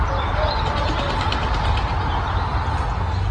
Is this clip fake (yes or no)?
no